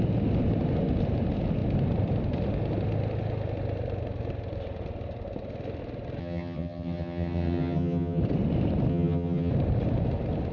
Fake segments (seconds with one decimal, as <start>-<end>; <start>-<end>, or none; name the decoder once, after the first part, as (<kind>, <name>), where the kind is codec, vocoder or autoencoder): 6.2-8.2 (vocoder, HiFi-GAN); 8.9-9.5